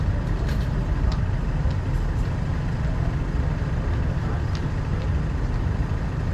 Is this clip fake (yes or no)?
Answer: no